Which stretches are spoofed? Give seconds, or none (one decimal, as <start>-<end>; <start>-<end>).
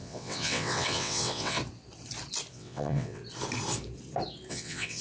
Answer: 0.0-1.6; 2.5-3.2; 4.5-5.0